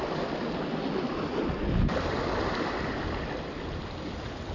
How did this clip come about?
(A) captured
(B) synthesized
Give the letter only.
A